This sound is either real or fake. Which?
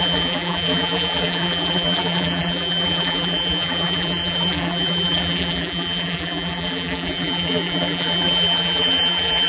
fake